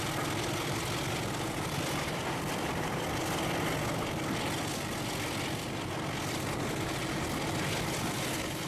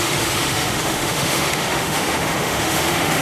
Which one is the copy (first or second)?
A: second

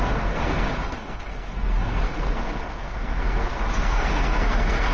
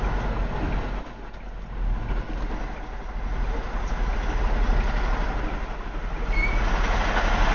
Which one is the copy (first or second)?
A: first